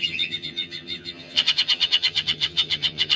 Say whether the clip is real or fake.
fake